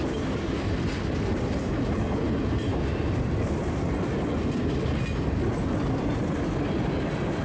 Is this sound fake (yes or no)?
no